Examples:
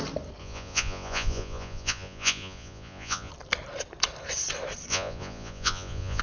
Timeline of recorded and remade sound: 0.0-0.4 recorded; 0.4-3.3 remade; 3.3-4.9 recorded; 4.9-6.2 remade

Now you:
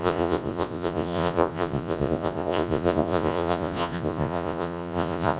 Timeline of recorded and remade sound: 0.0-5.4 remade